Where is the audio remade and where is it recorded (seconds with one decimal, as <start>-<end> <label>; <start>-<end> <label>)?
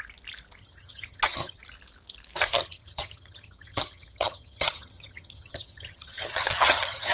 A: 0.0-0.6 recorded; 0.6-1.6 remade; 1.6-2.5 recorded; 2.5-7.1 remade